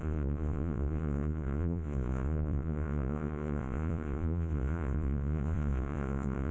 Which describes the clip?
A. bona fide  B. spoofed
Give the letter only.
B